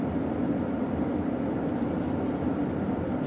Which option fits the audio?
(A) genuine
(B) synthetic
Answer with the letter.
A